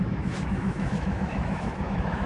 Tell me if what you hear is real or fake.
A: fake